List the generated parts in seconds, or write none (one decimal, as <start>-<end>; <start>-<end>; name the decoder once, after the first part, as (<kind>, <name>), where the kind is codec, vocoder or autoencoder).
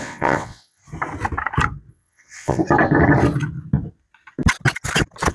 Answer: 0.0-0.8 (vocoder, WaveNeXt); 1.9-2.6